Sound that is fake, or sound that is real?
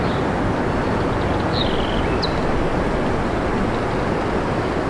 real